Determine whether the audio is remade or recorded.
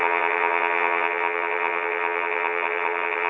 remade